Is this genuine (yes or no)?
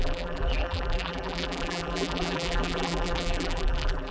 no